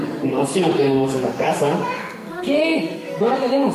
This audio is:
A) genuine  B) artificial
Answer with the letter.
B